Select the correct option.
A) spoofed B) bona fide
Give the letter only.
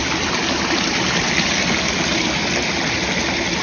B